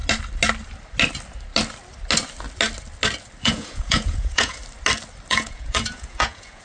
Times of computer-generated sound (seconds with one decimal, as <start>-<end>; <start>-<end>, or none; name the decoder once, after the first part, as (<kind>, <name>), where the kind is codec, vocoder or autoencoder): 3.4-4.6 (vocoder, Vocos); 5.3-6.6